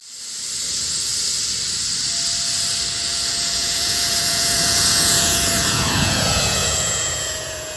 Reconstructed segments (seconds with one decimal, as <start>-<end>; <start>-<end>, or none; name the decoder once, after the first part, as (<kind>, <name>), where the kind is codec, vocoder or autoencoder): 0.7-1.1 (vocoder, Vocos); 2.9-7.8